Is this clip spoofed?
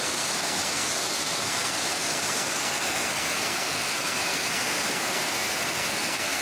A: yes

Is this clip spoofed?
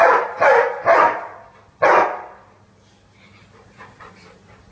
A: no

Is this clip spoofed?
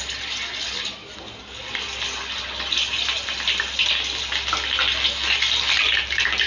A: no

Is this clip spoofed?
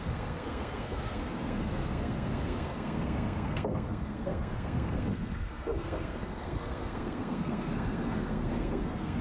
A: yes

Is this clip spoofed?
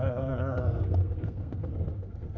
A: yes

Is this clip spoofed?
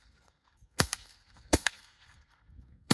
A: yes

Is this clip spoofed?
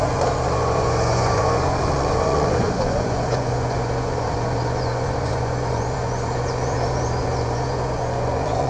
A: yes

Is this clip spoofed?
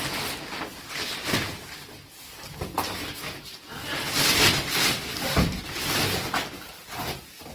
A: no